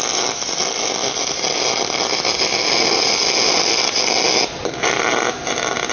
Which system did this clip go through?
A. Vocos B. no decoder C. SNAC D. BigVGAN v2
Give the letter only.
B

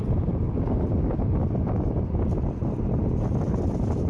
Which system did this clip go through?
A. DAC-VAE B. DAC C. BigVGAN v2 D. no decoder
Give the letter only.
D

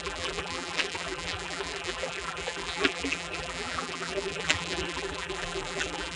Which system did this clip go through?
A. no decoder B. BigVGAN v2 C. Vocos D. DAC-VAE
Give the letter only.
B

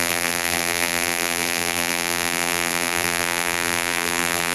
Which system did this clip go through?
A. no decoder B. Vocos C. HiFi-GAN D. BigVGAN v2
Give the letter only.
D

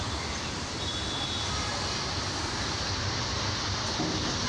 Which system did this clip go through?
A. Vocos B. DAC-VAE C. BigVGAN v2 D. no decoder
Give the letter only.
C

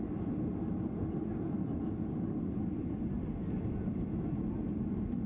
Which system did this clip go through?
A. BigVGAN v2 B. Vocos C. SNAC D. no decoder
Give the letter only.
A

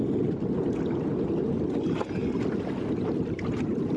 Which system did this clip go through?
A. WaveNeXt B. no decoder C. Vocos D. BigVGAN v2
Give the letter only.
B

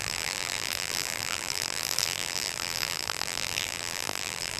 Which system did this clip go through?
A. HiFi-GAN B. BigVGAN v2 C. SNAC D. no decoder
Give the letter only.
B